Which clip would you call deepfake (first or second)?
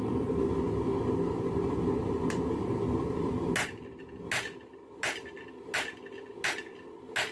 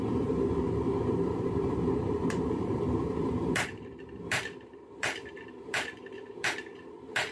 second